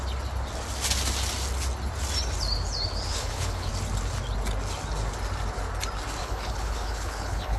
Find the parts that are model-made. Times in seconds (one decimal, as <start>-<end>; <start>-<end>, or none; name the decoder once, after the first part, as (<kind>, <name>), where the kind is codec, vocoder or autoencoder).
3.1-3.7 (codec, HILCodec); 6.2-7.6